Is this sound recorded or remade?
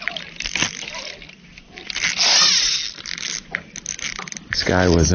recorded